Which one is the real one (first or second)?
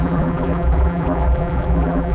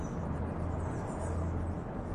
second